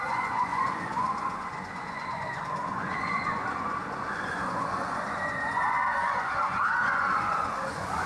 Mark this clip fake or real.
fake